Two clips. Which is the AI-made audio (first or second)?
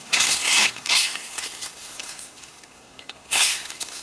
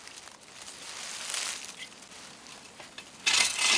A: first